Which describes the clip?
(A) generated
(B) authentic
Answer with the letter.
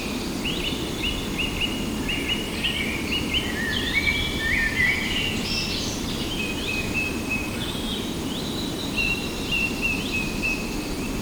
B